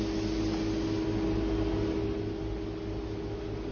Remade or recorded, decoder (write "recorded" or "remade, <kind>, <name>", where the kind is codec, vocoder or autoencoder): recorded